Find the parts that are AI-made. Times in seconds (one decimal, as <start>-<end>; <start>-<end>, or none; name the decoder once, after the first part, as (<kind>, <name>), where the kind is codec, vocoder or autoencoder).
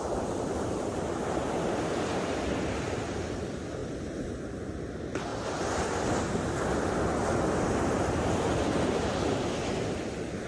none